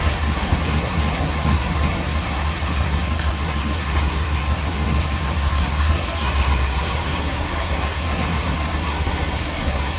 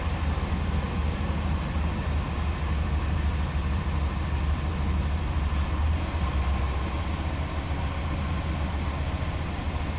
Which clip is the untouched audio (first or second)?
second